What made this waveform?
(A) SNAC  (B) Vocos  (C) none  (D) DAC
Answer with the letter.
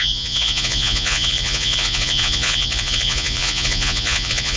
B